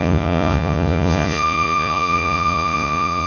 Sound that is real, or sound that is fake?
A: fake